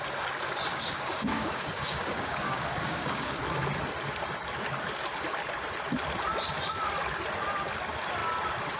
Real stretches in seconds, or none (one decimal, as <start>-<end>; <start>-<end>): 0.0-0.7; 3.4-8.8